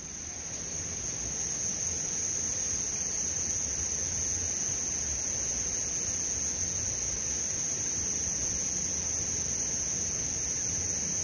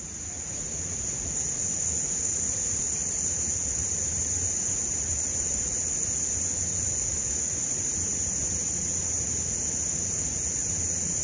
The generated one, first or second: second